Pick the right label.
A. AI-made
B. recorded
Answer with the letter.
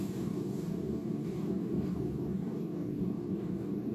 A